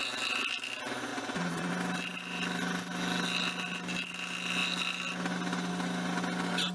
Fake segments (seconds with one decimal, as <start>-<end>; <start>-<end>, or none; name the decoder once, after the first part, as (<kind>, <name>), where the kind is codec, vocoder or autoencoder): 1.1-1.7 (vocoder, Vocos)